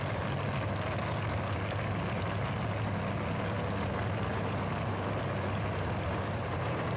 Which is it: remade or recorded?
recorded